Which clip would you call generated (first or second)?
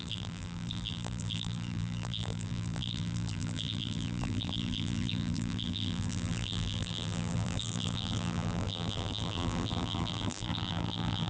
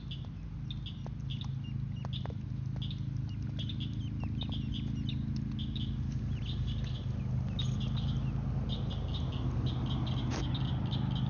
first